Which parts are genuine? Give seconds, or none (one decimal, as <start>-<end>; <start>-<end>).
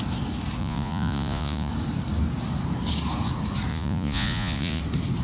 0.0-0.6; 1.7-3.7; 4.8-5.2